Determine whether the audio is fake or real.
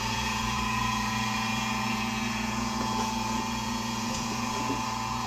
fake